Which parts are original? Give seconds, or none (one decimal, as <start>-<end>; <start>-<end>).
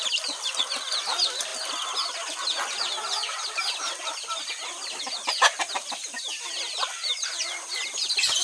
1.5-5.0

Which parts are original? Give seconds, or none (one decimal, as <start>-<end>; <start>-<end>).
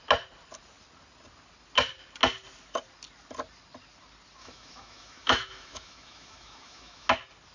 0.0-4.4; 7.1-7.5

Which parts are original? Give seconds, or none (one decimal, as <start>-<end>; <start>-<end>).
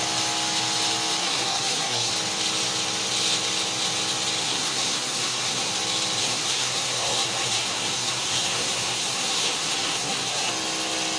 0.0-1.2; 2.1-4.4; 5.7-6.2; 10.5-11.2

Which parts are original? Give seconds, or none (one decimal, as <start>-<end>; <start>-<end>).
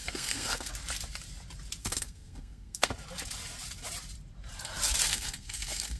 0.7-1.8; 2.9-5.1